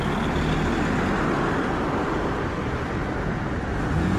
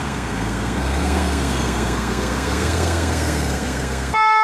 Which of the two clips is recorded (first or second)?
first